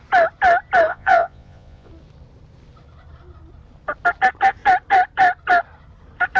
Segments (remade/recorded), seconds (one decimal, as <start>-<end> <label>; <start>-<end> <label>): 0.0-0.9 recorded; 0.9-1.9 remade; 1.9-6.4 recorded